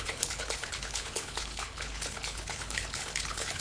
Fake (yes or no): yes